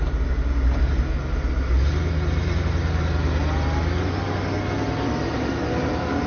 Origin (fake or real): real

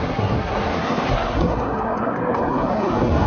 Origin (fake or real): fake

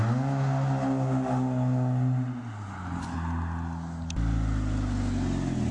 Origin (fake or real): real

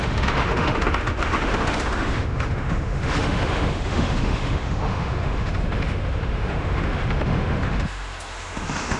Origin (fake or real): fake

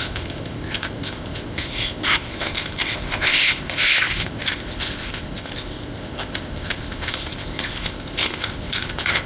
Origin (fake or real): fake